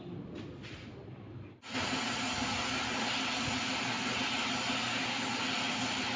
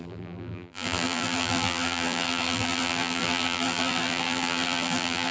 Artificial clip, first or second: second